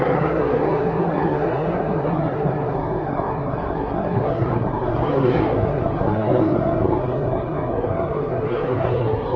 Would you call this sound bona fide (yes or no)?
no